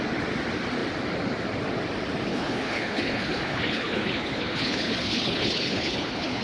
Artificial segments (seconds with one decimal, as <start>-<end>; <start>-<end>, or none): 2.3-6.4